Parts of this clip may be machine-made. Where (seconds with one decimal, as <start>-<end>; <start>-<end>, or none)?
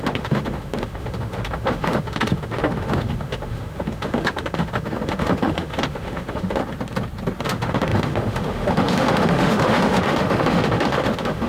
0.0-6.6; 7.4-11.5